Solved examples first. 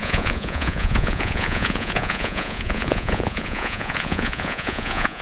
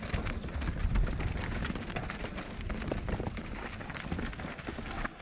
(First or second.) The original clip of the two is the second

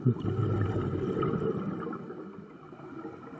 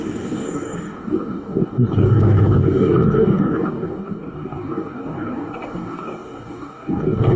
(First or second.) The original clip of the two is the first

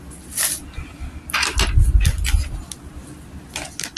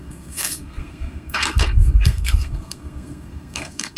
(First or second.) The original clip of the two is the first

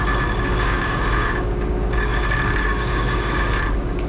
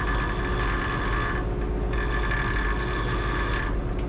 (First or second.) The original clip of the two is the second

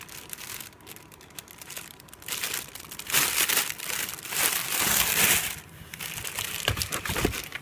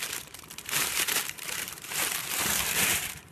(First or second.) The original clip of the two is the first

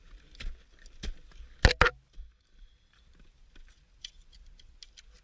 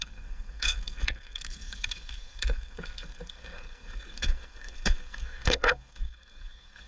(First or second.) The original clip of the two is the first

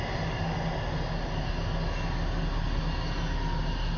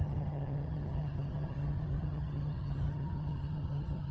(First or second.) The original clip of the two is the first